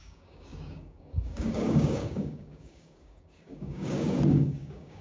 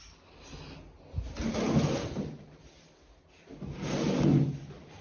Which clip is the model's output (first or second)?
first